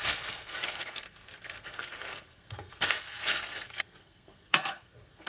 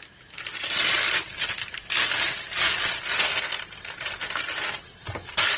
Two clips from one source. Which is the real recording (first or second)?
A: second